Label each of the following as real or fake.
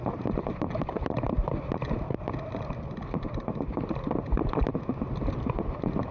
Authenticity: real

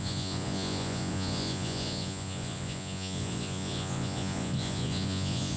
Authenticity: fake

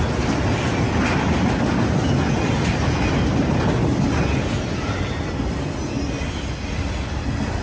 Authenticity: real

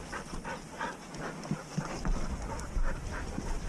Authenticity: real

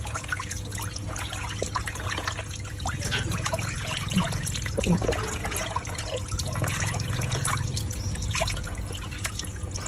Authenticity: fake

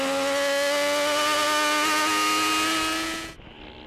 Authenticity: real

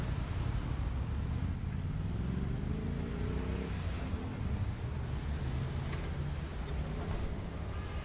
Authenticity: real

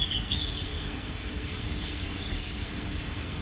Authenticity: fake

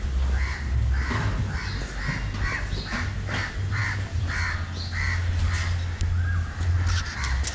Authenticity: real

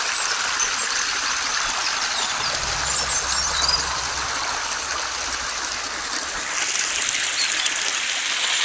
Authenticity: real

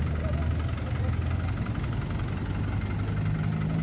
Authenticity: real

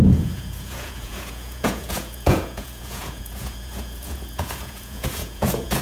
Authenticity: fake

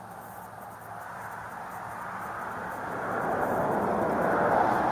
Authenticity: real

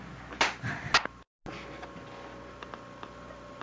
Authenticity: real